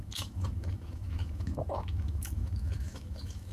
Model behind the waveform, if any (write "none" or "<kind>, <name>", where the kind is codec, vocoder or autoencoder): autoencoder, DAC-VAE